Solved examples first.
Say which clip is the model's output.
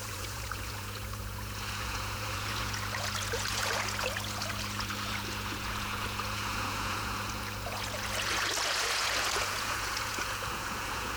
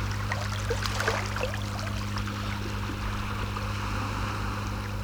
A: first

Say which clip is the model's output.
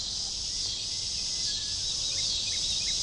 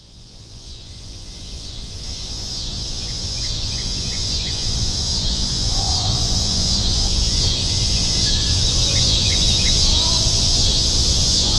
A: second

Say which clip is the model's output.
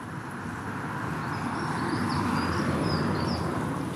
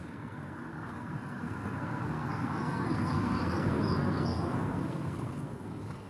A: second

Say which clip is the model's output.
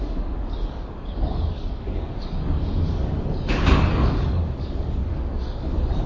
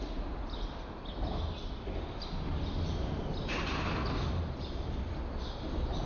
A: first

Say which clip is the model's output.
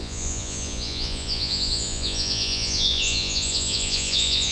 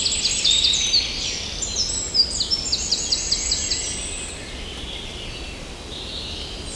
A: first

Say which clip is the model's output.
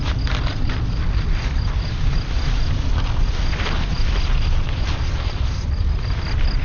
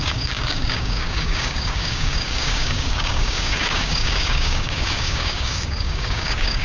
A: second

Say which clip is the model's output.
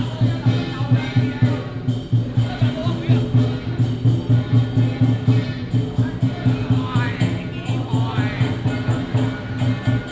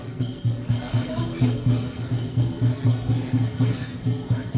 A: second